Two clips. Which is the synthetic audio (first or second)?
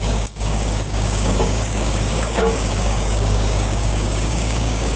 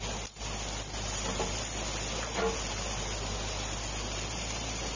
first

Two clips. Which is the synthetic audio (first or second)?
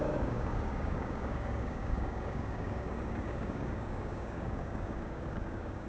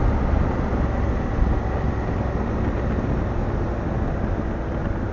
first